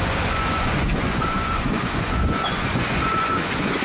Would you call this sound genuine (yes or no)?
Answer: no